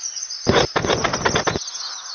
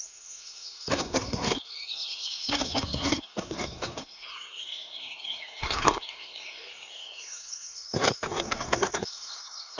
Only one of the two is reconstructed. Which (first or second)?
second